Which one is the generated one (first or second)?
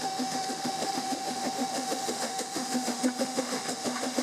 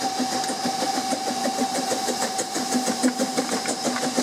first